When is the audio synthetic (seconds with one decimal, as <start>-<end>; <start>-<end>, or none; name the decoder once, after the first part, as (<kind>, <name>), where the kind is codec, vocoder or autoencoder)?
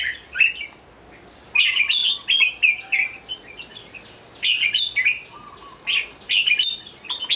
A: none